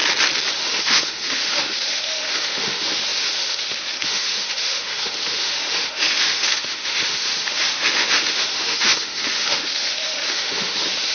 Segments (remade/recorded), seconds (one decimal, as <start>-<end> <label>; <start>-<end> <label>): 0.0-0.5 recorded; 0.5-11.1 remade